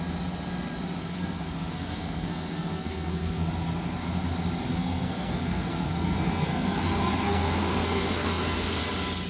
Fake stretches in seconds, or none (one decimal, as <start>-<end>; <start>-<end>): 1.0-3.5; 4.7-8.8